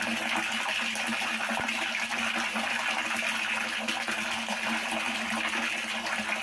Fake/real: real